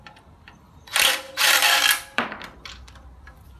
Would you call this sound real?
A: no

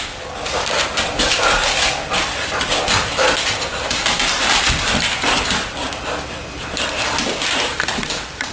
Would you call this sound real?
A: no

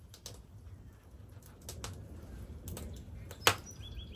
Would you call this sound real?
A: yes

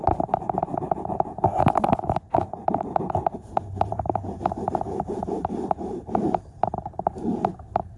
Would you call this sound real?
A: no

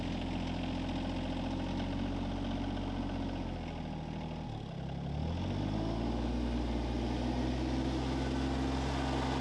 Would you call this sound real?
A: yes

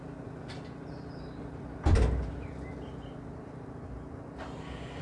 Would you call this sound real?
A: yes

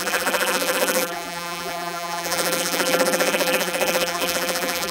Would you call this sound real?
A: no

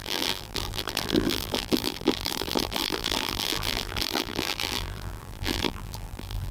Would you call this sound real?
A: no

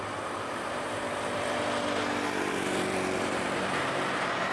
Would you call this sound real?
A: no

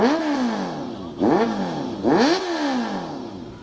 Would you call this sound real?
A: yes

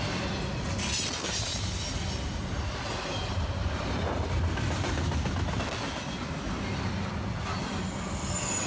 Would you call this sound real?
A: yes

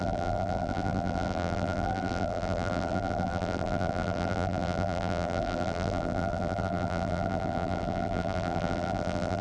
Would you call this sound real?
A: no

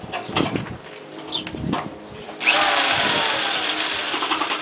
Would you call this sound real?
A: no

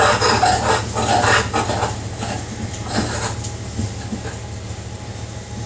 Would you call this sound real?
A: yes